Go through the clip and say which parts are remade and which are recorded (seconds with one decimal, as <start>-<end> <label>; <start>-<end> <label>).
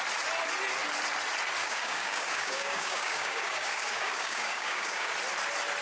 0.0-1.6 recorded; 1.6-5.1 remade; 5.1-5.8 recorded